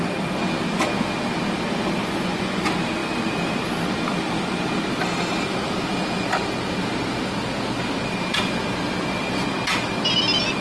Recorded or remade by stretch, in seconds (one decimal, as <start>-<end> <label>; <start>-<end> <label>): 0.0-2.0 recorded; 2.0-2.6 remade; 2.6-10.6 recorded